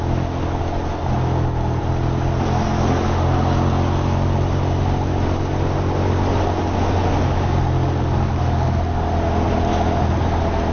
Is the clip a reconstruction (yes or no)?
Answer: no